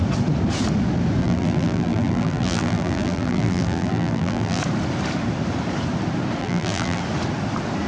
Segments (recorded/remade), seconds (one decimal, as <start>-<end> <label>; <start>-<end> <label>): 0.0-1.2 recorded; 1.2-4.6 remade; 4.6-6.4 recorded; 6.4-7.0 remade; 7.0-7.9 recorded